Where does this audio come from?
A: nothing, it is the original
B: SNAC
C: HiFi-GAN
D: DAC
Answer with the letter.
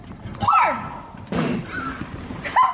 A